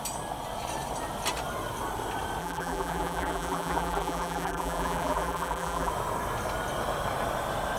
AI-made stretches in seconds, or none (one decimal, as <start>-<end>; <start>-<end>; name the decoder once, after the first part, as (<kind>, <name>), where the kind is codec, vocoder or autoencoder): 2.4-5.9 (vocoder, BigVGAN v2)